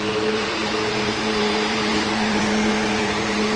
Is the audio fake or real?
fake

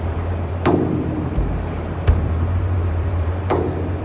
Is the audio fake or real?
fake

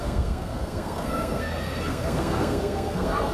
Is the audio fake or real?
fake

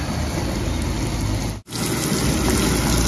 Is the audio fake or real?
real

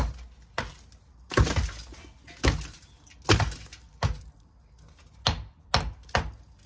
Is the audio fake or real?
real